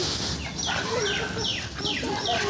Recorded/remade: recorded